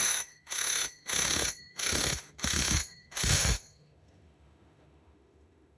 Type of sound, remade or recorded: remade